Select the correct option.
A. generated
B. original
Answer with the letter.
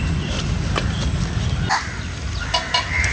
B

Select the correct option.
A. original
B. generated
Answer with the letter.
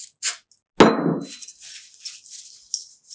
A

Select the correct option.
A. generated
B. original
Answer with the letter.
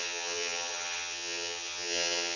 A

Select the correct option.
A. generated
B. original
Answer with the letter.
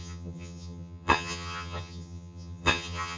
A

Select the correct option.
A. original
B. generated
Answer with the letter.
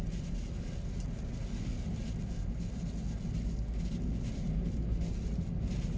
A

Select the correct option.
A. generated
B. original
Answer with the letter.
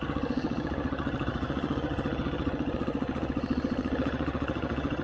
A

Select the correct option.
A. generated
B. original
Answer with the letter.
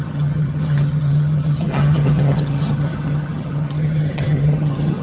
A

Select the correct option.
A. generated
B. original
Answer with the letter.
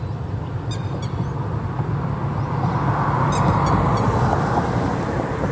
B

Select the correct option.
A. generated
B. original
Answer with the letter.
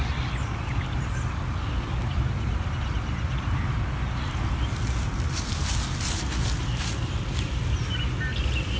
B